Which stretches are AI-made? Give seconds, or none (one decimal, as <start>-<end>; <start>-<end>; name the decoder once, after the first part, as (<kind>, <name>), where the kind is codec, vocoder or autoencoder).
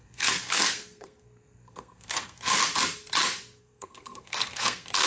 0.0-2.6 (codec, SNAC); 3.6-5.1